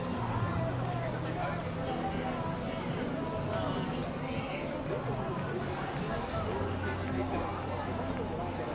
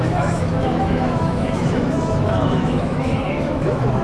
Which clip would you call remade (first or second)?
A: second